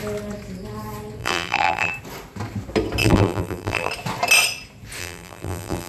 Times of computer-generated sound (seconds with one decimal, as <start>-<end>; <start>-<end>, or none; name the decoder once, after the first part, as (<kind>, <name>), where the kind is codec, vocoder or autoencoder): 1.2-1.9 (vocoder, BigVGAN v2); 3.0-3.9; 5.0-5.9